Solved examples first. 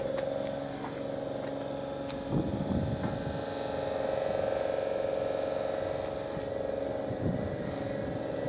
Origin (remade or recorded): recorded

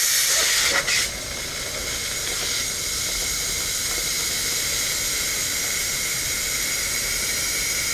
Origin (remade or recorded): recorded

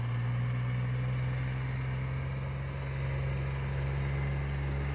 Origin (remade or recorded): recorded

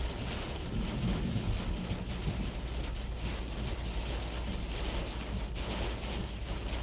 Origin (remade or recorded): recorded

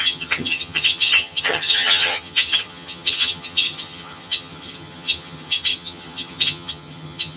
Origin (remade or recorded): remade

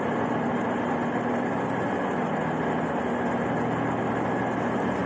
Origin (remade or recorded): recorded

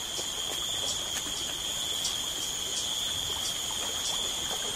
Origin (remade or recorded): recorded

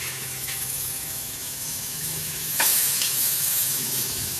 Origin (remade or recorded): remade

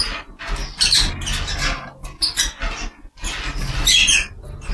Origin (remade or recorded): recorded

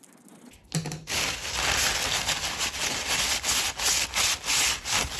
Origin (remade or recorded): recorded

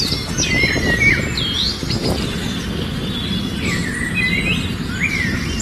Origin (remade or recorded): recorded